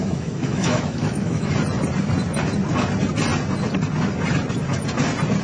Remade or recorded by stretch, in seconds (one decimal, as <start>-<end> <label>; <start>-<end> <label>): 0.0-1.5 remade; 1.5-5.4 recorded